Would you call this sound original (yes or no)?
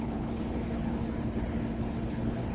no